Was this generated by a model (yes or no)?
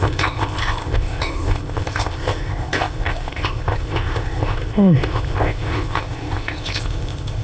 yes